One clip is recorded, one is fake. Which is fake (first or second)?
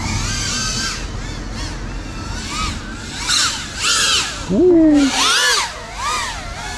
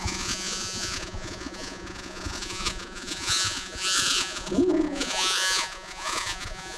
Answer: second